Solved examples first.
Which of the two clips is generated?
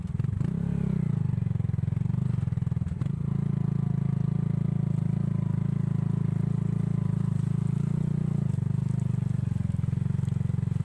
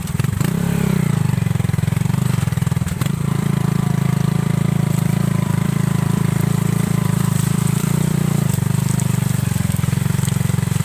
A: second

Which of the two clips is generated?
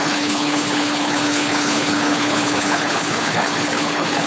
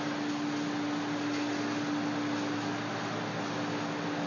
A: first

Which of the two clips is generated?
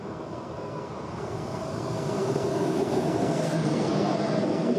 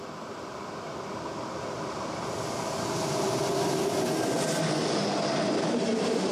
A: first